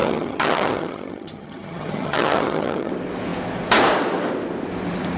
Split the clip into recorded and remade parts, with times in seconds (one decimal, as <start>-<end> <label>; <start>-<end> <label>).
0.0-2.9 remade; 2.9-5.2 recorded